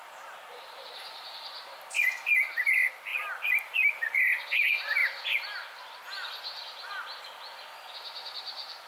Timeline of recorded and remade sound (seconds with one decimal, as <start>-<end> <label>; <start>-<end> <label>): 0.0-3.1 recorded; 3.1-3.9 remade; 3.9-8.9 recorded